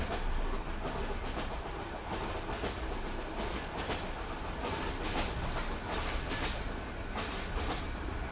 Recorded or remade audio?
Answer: recorded